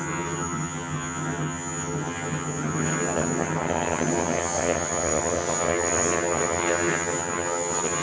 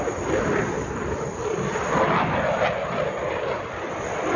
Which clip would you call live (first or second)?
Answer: second